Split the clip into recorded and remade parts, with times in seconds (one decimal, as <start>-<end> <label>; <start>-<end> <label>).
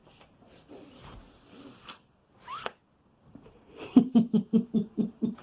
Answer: 0.0-3.2 recorded; 3.2-5.4 remade